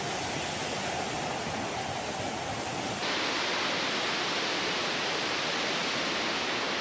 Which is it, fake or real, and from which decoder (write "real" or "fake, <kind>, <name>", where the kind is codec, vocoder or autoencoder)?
real